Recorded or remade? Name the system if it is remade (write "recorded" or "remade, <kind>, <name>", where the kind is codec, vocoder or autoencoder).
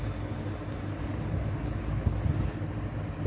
recorded